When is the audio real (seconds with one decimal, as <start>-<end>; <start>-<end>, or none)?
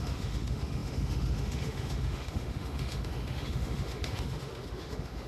none